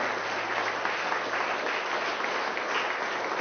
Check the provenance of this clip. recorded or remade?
recorded